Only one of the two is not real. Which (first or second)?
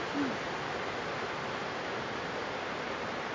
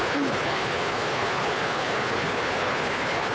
second